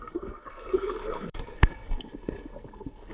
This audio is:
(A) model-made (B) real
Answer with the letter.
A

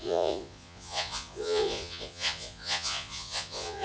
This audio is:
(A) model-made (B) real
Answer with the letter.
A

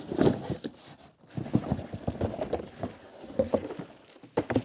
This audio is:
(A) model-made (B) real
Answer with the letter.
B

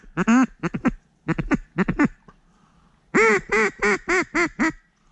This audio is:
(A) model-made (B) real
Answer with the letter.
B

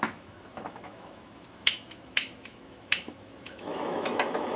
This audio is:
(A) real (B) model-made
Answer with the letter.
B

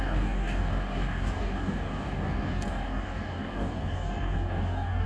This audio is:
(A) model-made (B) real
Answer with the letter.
A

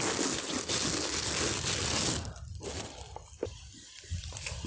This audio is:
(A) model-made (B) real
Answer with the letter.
B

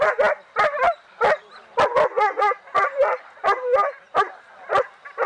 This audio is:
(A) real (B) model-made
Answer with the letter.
A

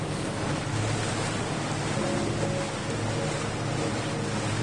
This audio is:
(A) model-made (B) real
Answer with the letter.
B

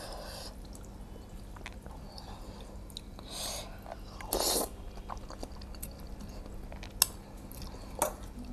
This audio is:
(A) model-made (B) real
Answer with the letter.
B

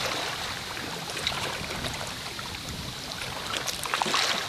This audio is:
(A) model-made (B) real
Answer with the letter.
B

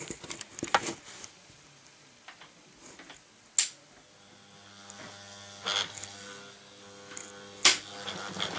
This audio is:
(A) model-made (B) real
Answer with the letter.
B